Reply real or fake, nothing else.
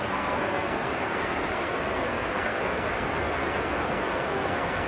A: fake